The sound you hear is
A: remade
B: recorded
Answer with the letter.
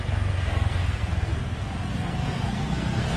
A